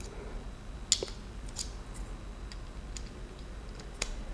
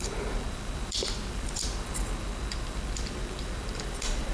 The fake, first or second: second